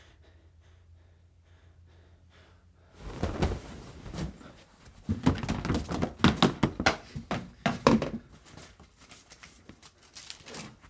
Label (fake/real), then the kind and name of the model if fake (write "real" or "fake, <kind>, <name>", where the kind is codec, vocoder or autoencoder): real